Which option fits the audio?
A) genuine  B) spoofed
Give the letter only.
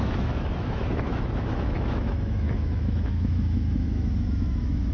B